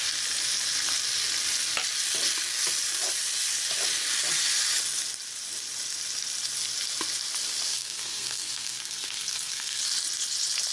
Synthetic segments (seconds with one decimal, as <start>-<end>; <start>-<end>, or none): 7.7-9.8